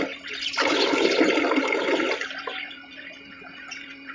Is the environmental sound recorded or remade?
recorded